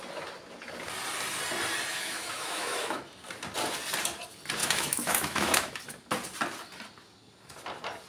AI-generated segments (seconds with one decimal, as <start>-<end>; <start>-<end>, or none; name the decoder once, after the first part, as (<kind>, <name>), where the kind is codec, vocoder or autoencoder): 1.9-3.0 (autoencoder, DAC-VAE); 4.6-5.8